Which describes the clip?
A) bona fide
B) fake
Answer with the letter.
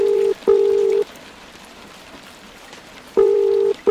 B